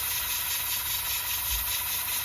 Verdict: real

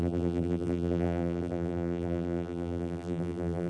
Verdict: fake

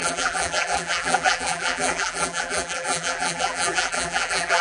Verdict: fake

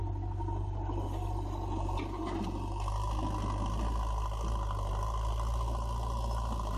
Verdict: real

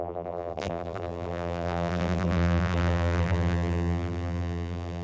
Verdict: fake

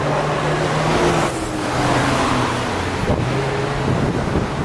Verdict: real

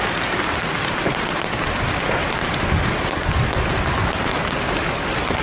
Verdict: real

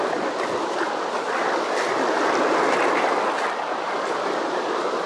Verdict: real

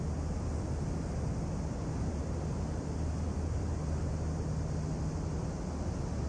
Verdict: real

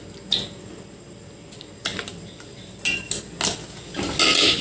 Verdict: real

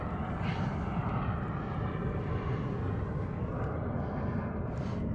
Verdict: real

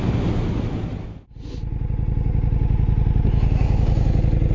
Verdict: real